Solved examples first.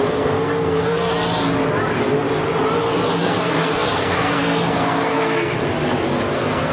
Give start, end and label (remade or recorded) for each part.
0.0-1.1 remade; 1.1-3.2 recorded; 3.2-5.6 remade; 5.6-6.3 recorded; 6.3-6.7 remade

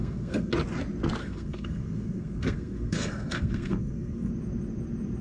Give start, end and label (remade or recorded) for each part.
0.0-0.5 remade; 0.5-1.2 recorded; 1.2-4.3 remade; 4.3-5.2 recorded

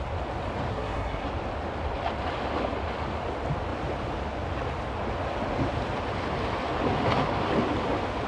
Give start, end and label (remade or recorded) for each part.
0.0-0.7 recorded; 0.7-1.3 remade; 1.3-8.3 recorded